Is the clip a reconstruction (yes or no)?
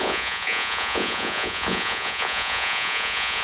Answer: yes